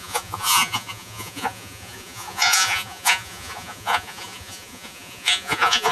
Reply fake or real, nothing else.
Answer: fake